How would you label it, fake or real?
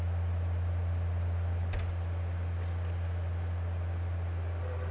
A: real